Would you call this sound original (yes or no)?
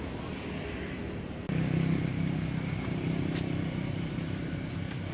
yes